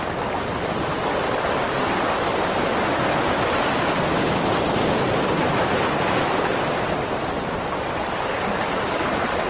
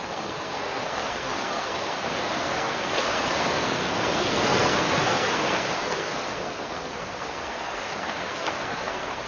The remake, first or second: second